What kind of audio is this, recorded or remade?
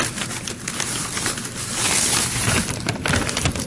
recorded